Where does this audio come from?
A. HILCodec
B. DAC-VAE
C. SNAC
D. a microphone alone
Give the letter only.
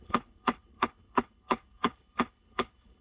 A